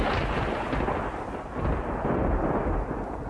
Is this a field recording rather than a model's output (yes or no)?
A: yes